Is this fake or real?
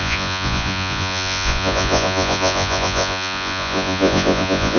fake